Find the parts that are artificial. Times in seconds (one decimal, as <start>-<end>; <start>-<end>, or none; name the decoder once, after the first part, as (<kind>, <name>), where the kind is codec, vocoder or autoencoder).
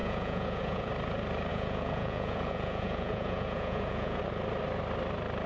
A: 0.0-0.9 (vocoder, Vocos); 1.5-4.2